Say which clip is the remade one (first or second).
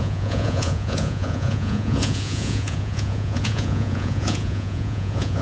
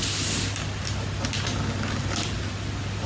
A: first